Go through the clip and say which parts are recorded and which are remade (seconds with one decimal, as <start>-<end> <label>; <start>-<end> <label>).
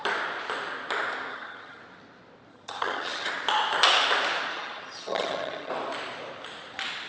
0.0-1.3 recorded; 1.3-1.8 remade; 1.8-2.5 recorded; 2.5-3.3 remade; 3.3-4.5 recorded; 4.5-5.7 remade; 5.7-7.1 recorded